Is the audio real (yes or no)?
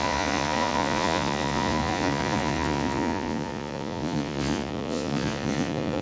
no